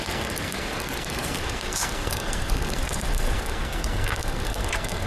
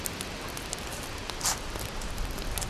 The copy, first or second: first